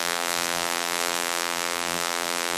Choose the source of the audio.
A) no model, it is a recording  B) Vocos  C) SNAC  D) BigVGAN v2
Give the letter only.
D